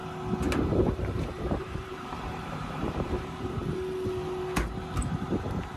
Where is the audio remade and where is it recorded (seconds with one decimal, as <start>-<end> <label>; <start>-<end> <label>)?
0.0-0.7 recorded; 0.7-3.6 remade; 3.6-5.0 recorded; 5.0-5.8 remade